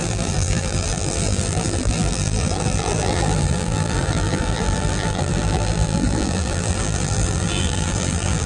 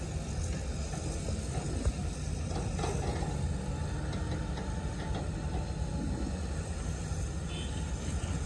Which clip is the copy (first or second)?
first